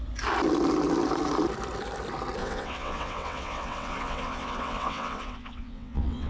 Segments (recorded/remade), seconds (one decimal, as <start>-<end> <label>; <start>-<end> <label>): 0.0-2.4 recorded; 2.4-6.3 remade